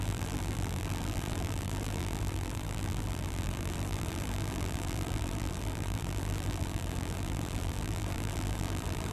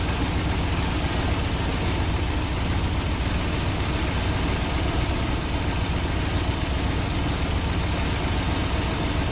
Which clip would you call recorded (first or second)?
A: second